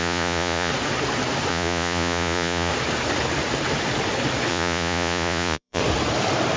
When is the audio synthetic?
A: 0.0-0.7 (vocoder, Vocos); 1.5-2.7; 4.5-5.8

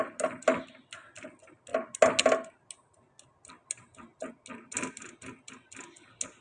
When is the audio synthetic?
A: none

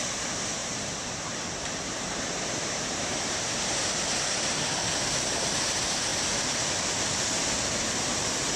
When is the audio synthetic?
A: 0.6-3.8 (vocoder, BigVGAN v2)

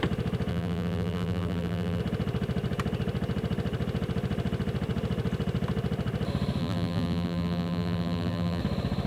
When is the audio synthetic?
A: 0.5-2.0 (vocoder, BigVGAN v2); 6.6-8.6

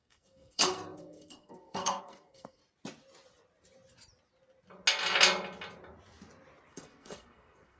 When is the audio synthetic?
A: 0.0-2.6 (codec, SNAC); 6.7-7.8

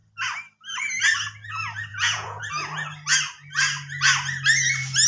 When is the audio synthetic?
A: 1.9-2.4 (vocoder, Vocos)